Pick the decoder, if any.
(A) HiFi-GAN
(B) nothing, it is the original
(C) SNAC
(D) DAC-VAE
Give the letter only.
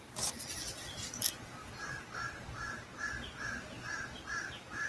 B